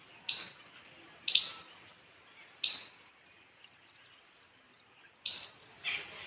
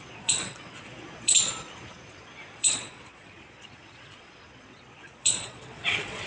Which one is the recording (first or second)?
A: first